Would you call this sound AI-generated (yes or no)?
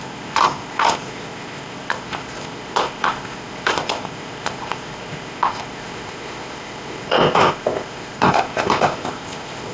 yes